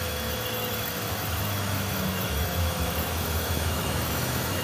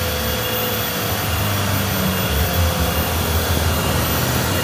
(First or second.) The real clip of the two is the second